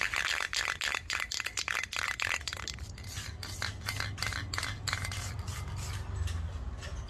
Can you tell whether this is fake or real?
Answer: real